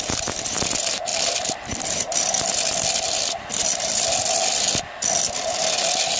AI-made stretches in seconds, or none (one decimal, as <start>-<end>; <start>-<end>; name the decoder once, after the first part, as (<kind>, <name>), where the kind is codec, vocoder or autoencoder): 1.1-4.8 (vocoder, BigVGAN v2)